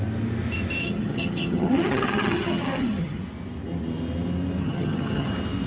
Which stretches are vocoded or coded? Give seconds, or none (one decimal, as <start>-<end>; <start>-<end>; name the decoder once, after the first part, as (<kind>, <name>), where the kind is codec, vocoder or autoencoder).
0.8-3.2 (vocoder, HiFi-GAN); 4.6-5.3